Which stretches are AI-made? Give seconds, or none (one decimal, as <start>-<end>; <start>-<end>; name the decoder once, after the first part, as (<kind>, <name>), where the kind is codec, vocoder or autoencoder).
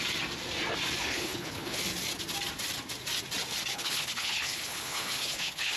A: 1.0-1.8 (codec, HILCodec); 3.7-5.8